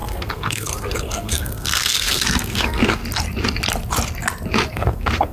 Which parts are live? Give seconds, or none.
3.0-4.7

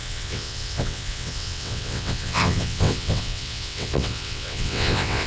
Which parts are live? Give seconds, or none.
none

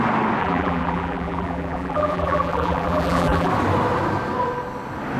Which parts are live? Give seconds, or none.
0.0-0.4; 3.5-5.2

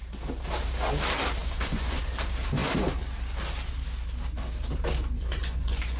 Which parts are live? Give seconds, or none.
0.0-1.4; 2.0-5.4

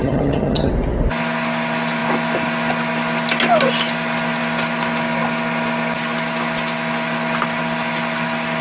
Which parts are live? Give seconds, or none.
0.7-8.6

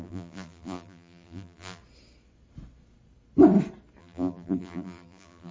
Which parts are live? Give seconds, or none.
1.8-4.0

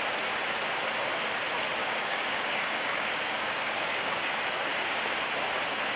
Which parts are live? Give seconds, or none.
0.0-1.8; 4.3-6.0